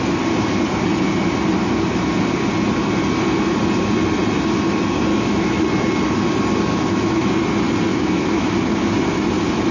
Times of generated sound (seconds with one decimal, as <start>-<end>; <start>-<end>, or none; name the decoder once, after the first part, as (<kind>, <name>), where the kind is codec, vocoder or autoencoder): 5.1-5.6 (autoencoder, DAC-VAE); 6.7-7.3; 7.9-8.5